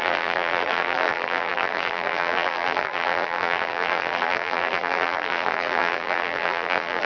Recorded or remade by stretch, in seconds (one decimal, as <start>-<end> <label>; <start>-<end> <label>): 0.0-7.1 remade